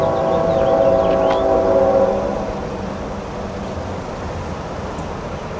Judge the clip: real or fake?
real